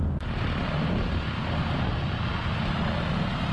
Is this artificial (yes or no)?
no